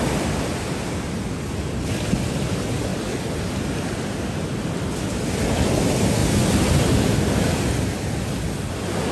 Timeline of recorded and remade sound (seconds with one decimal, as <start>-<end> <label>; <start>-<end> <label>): 0.0-9.1 recorded